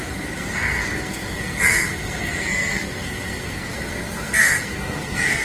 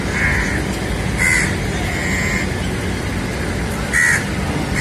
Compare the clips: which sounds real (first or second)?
second